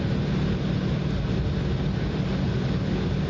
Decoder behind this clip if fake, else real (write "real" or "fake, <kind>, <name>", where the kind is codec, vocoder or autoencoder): real